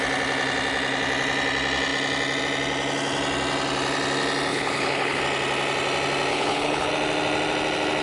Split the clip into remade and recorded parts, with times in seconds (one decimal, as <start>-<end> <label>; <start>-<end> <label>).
0.0-4.5 recorded; 4.5-5.2 remade; 5.2-6.3 recorded; 6.3-6.9 remade; 6.9-8.0 recorded

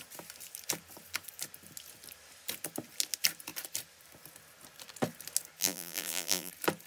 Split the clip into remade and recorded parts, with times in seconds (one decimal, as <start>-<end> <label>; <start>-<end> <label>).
0.0-5.6 recorded; 5.6-6.5 remade; 6.5-6.9 recorded